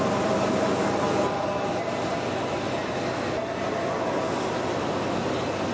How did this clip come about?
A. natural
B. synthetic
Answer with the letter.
A